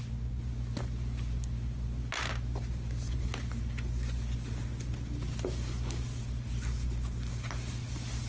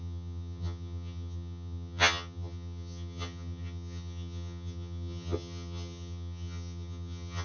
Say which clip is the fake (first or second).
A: second